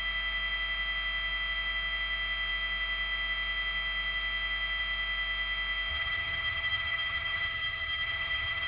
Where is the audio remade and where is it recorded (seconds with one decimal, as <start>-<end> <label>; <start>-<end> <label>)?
0.0-5.9 recorded; 5.9-8.7 remade